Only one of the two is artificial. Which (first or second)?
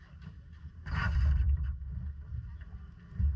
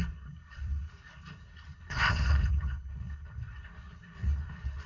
second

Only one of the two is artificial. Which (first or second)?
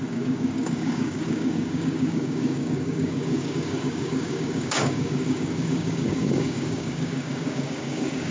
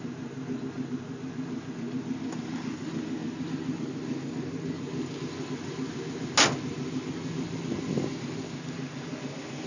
first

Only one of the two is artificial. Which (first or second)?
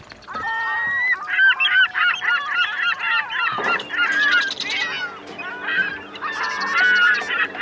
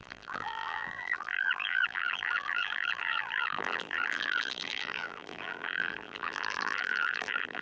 second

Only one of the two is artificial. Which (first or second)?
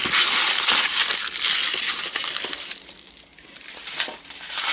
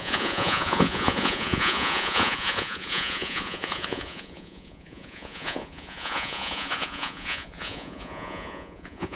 second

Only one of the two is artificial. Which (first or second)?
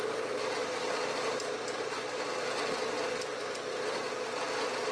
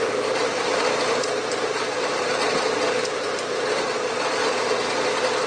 second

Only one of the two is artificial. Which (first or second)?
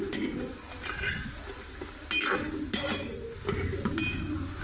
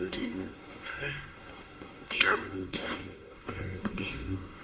second